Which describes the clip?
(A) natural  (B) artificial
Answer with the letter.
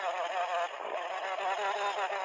A